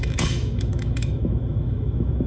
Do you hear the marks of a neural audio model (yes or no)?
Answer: yes